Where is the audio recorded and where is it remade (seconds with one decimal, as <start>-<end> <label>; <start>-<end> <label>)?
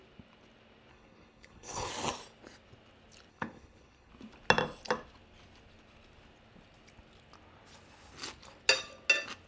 0.0-0.9 recorded; 0.9-1.9 remade; 1.9-3.3 recorded; 3.3-4.1 remade; 4.1-9.5 recorded